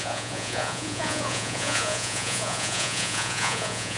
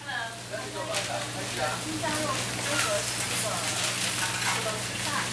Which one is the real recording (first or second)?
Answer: second